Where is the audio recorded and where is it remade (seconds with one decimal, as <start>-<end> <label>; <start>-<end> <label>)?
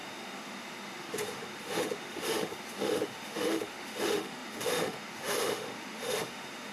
0.0-6.7 remade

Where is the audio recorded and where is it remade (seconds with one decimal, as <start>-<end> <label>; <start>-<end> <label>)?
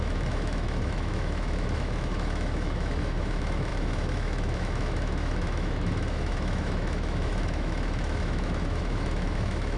0.0-9.8 remade